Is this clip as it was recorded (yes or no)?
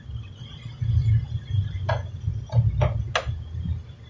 yes